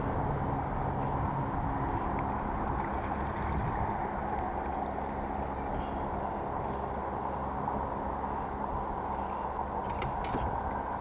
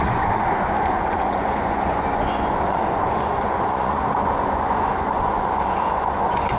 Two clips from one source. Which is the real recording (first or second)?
first